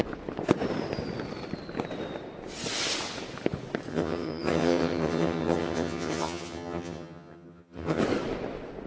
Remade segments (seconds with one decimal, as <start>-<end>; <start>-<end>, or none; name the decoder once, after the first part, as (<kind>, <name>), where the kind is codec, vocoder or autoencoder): 3.9-8.0 (vocoder, HiFi-GAN)